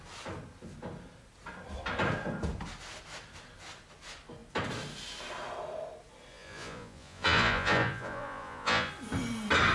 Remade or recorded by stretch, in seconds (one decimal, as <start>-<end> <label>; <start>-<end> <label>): 0.0-6.3 recorded; 6.3-8.9 remade; 8.9-9.7 recorded